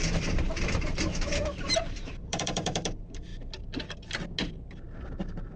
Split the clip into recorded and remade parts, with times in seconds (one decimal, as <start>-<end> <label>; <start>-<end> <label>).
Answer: 0.0-3.3 remade; 3.3-5.6 recorded